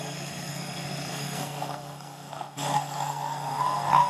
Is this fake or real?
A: fake